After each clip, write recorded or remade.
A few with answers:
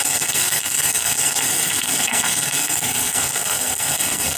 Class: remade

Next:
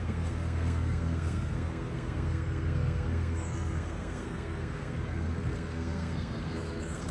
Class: remade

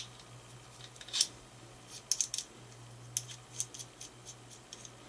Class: recorded